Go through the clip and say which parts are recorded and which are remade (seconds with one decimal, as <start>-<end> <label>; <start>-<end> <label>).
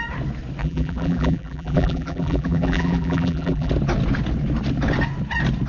0.0-0.6 recorded; 0.6-3.7 remade; 3.7-5.7 recorded